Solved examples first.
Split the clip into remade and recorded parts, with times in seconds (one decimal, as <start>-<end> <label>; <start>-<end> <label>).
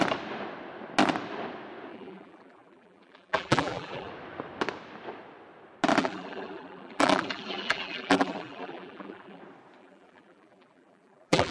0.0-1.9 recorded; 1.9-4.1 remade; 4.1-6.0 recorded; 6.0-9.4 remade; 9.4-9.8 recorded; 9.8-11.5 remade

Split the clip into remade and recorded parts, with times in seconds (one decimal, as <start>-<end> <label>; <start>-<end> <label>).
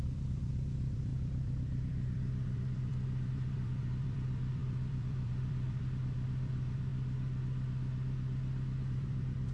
0.0-6.9 remade; 6.9-8.8 recorded; 8.8-9.5 remade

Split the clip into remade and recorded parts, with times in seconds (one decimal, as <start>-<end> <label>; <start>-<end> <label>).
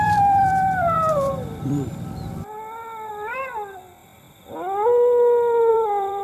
0.0-1.9 remade; 1.9-3.1 recorded; 3.1-4.0 remade; 4.0-5.7 recorded; 5.7-6.2 remade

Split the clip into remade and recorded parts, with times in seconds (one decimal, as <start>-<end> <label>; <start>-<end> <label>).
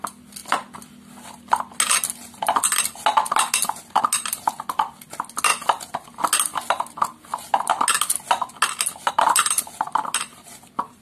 0.0-11.0 recorded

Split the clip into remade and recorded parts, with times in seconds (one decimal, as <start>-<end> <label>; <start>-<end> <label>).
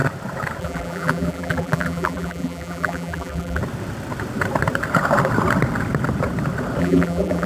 0.0-0.6 recorded; 0.6-3.6 remade; 3.6-6.8 recorded; 6.8-7.5 remade